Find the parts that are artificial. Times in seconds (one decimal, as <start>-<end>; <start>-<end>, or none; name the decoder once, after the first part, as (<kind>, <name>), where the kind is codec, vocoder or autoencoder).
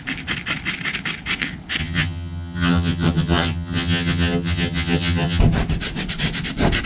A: 1.8-5.4 (vocoder, HiFi-GAN)